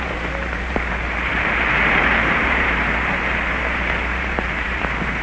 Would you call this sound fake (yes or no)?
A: yes